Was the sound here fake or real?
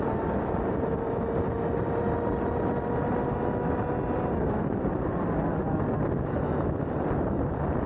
real